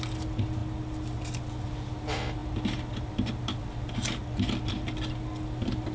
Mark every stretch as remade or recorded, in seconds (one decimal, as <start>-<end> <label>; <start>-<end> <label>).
0.0-5.9 recorded